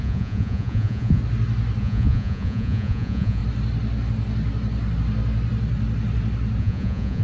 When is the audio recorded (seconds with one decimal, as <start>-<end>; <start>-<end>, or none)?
1.2-1.8; 3.4-6.6